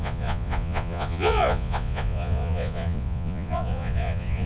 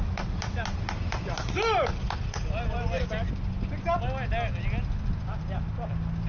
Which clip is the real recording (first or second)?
second